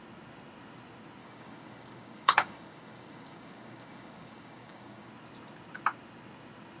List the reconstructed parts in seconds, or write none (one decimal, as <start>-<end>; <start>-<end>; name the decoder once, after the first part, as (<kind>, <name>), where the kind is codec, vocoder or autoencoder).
1.2-5.1 (codec, DAC)

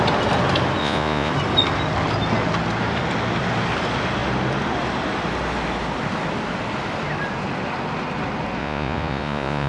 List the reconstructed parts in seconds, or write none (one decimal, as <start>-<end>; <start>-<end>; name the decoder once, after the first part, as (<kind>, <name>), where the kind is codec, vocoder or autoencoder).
0.8-1.3 (vocoder, Vocos); 8.6-9.7

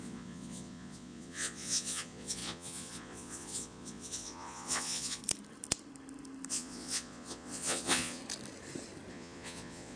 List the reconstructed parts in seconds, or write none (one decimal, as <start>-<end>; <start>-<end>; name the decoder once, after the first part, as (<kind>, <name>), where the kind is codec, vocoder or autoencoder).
0.0-5.2 (vocoder, Vocos); 6.5-8.2; 9.1-10.0

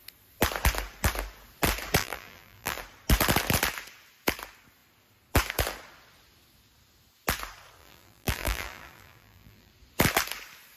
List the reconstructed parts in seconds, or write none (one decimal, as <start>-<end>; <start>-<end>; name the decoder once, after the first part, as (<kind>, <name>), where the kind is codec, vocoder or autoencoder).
2.0-2.8 (vocoder, BigVGAN v2); 7.8-9.7

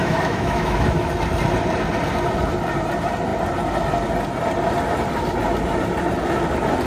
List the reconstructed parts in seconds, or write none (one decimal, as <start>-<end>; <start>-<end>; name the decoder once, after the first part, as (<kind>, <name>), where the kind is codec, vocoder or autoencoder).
0.0-1.1 (autoencoder, DAC-VAE)